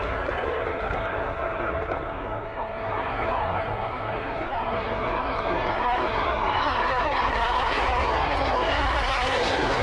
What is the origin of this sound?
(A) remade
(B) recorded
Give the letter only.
A